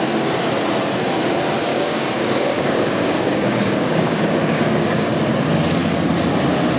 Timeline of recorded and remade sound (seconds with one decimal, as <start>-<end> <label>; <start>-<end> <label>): 0.0-1.7 recorded; 1.7-5.1 remade; 5.1-6.8 recorded